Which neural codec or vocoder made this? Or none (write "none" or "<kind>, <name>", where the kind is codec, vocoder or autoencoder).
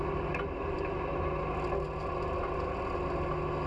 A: none